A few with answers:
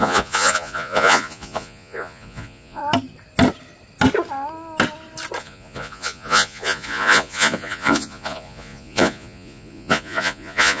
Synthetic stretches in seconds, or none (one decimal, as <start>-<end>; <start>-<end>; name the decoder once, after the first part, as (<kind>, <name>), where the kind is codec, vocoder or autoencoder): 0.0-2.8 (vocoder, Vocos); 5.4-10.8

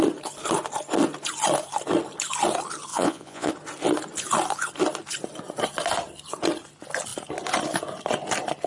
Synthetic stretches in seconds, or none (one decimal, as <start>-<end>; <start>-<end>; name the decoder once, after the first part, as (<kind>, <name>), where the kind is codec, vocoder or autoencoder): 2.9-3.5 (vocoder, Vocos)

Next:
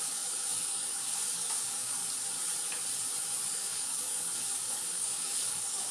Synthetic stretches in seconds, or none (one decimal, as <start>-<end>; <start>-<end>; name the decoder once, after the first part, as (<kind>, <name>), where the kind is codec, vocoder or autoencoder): 0.0-2.0 (codec, DAC); 3.5-5.9